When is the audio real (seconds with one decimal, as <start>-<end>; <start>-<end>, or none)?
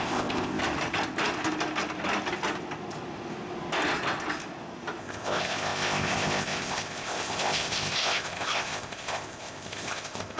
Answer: 0.6-5.0